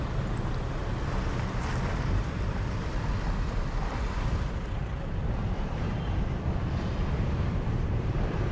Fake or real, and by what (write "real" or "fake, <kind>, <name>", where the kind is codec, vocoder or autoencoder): fake, vocoder, BigVGAN v2